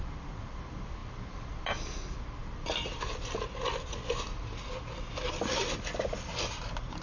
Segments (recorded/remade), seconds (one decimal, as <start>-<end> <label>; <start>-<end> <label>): 0.0-7.0 recorded